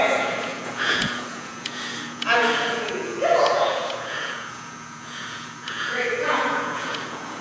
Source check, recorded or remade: remade